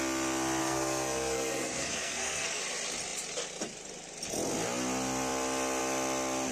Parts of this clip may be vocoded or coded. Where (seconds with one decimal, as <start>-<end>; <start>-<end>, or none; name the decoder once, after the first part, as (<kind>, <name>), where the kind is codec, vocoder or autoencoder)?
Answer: 0.6-2.6 (codec, SNAC)